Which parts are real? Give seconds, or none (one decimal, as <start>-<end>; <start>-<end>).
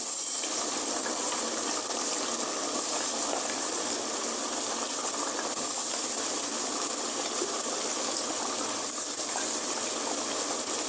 0.0-10.9